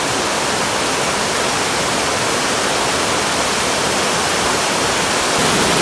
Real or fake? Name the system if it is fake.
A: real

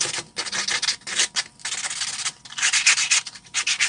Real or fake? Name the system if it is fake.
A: real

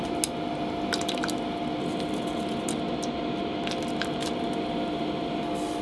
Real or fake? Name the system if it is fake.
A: real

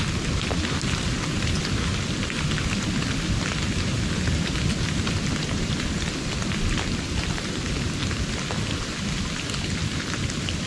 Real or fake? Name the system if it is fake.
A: real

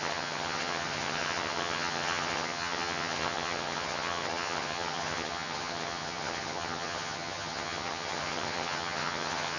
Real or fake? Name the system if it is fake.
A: fake, vocoder, HiFi-GAN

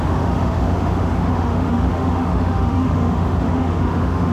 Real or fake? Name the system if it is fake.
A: fake, autoencoder, DAC-VAE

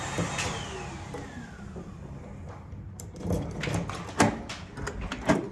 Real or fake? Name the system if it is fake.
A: real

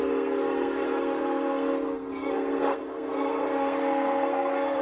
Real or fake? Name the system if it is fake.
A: fake, codec, SNAC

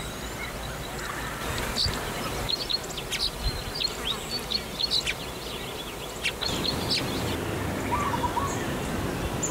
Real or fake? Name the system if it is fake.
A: real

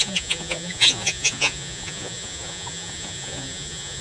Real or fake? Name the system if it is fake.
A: fake, vocoder, Vocos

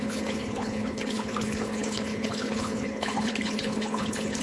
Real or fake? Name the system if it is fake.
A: fake, codec, HILCodec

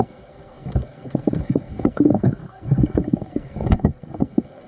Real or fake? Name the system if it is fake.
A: fake, codec, SNAC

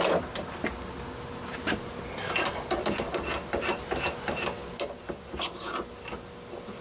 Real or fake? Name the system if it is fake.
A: real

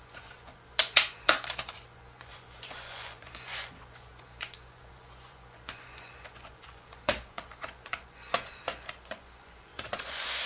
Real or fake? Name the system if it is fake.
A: fake, vocoder, Vocos